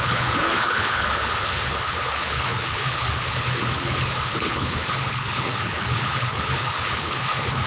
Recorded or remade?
remade